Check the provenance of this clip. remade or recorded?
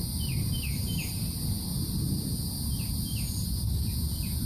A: recorded